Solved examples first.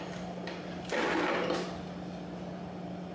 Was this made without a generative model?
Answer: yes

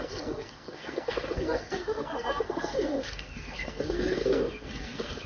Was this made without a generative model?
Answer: no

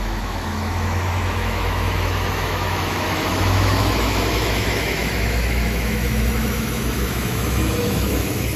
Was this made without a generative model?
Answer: no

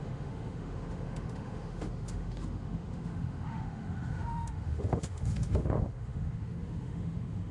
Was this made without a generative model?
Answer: no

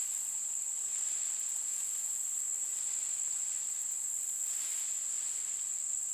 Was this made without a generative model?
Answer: yes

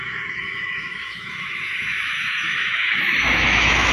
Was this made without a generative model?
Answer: no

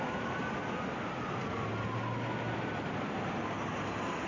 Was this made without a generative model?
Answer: yes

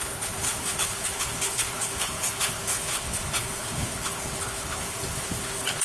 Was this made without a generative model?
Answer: no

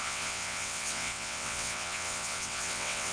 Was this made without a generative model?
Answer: no